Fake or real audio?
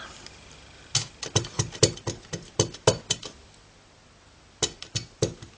real